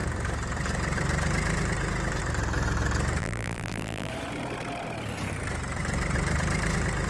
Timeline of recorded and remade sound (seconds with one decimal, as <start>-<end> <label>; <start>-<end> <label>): 0.0-3.2 recorded; 3.2-4.1 remade; 4.1-7.1 recorded